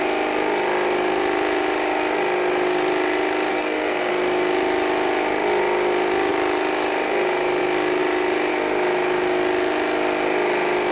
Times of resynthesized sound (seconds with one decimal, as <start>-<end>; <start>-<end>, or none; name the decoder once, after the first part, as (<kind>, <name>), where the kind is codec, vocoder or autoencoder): 3.5-4.1 (codec, SNAC)